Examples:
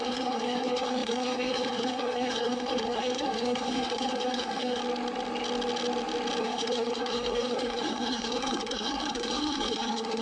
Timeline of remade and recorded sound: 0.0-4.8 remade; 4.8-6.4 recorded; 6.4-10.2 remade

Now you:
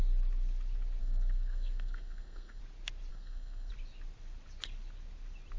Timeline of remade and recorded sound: 0.0-1.0 recorded; 1.0-2.6 remade; 2.6-3.1 recorded; 3.1-3.7 remade; 3.7-5.6 recorded

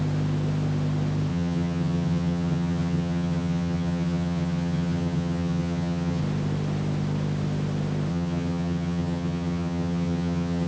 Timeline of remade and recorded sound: 0.0-1.3 recorded; 1.3-6.2 remade; 6.2-8.1 recorded; 8.1-10.7 remade

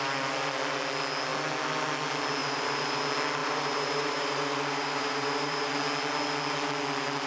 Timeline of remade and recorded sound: 0.0-2.4 recorded; 2.4-3.0 remade; 3.0-3.4 recorded; 3.4-5.7 remade; 5.7-7.3 recorded

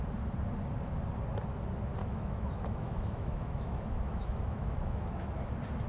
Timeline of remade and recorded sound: 0.0-2.0 recorded; 2.0-5.5 remade; 5.5-5.9 recorded